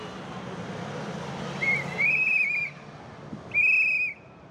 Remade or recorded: recorded